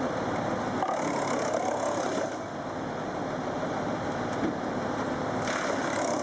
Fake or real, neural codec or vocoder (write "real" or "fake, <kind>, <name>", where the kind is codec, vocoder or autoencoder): real